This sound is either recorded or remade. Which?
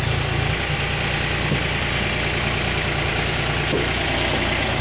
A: recorded